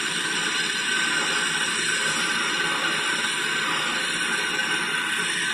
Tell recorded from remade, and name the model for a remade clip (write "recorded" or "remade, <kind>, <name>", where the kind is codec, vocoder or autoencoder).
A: recorded